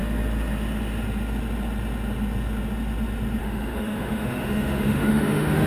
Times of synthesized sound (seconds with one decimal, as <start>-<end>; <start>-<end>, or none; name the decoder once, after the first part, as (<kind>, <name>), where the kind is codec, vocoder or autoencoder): 3.4-5.7 (autoencoder, DAC-VAE)